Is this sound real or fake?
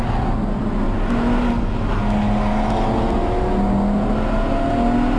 real